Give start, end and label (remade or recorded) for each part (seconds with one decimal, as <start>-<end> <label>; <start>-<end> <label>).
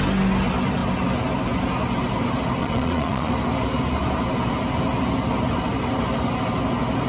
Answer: 0.0-2.6 recorded; 2.6-3.3 remade; 3.3-7.1 recorded